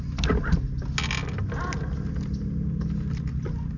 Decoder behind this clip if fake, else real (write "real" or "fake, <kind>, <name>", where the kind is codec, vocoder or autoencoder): real